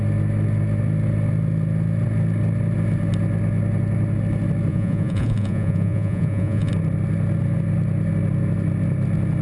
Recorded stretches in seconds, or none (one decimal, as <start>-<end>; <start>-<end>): 0.0-4.7; 6.7-9.4

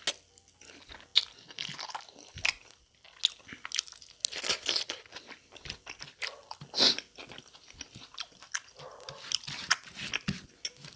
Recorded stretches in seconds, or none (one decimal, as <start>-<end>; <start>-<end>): 0.0-11.0

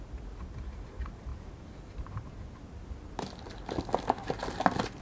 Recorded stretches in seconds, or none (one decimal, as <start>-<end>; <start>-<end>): 0.0-5.0

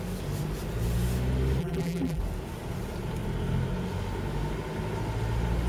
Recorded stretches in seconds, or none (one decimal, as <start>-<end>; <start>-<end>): 0.0-1.6; 2.2-5.7

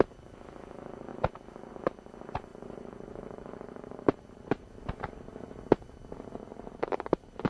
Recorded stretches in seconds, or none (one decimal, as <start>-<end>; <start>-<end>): 0.0-2.5; 5.1-6.5

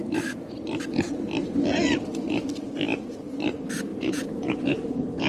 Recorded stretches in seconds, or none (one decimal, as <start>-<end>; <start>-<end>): 0.0-3.9

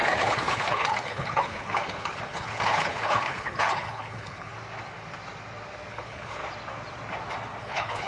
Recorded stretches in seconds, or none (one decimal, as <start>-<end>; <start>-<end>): 4.5-5.9; 6.4-7.6

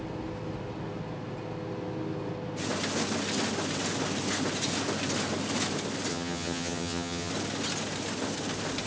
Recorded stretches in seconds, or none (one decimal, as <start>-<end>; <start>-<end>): 0.0-6.1; 7.3-8.9